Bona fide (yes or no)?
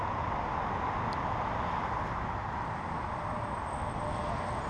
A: yes